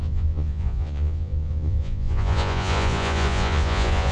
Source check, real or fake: fake